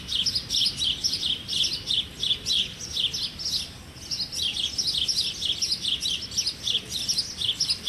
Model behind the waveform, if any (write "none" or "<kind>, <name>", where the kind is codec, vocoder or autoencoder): none